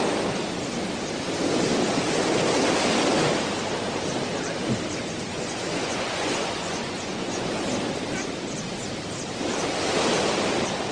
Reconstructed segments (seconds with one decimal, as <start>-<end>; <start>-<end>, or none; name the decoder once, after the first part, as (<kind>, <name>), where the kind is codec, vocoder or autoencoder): 5.3-7.5 (vocoder, Vocos)